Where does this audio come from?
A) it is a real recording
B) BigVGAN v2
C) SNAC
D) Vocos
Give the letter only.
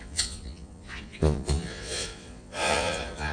D